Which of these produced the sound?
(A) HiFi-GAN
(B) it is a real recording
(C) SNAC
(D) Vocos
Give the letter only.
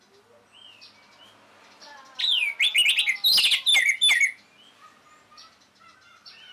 B